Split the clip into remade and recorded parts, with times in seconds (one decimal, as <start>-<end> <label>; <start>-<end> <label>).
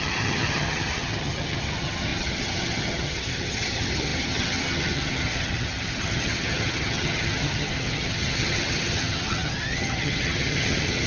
0.0-11.1 remade